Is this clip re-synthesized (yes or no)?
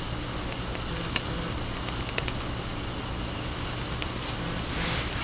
no